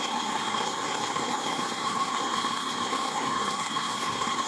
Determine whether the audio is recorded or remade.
remade